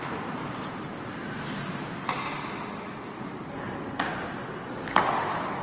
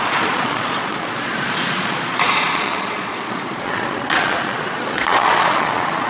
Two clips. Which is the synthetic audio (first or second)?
second